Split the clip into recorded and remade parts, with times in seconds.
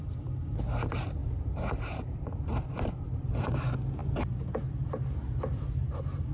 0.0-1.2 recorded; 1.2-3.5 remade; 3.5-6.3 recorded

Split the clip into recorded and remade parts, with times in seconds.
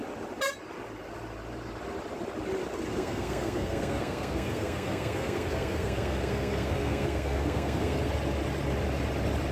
0.0-2.9 recorded; 2.9-8.1 remade; 8.1-9.5 recorded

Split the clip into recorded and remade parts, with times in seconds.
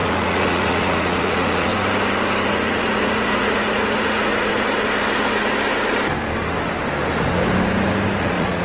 0.0-1.7 remade; 1.7-2.5 recorded; 2.5-4.5 remade; 4.5-8.2 recorded; 8.2-8.6 remade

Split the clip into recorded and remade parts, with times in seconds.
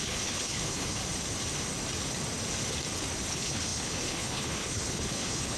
0.0-1.0 remade; 1.0-3.3 recorded; 3.3-5.6 remade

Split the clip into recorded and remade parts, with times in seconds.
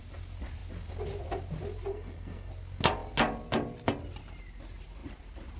0.0-1.9 recorded; 1.9-2.5 remade; 2.5-5.6 recorded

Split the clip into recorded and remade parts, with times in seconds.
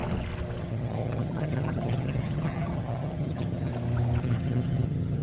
0.0-0.6 recorded; 0.6-3.7 remade; 3.7-4.2 recorded; 4.2-5.2 remade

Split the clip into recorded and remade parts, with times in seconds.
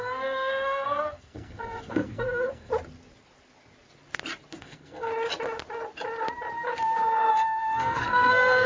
0.0-2.7 remade; 2.7-4.6 recorded; 4.6-5.1 remade; 5.1-7.3 recorded; 7.3-8.7 remade